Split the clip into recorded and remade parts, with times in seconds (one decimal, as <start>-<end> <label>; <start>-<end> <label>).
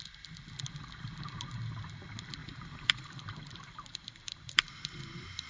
0.0-2.4 recorded; 2.4-5.5 remade